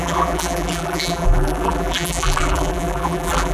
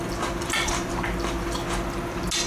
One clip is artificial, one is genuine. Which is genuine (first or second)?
second